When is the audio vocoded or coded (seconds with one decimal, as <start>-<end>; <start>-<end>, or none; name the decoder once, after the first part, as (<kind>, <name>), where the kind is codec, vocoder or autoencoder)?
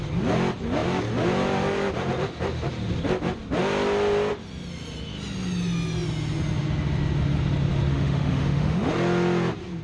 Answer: 7.9-8.9 (autoencoder, DAC-VAE)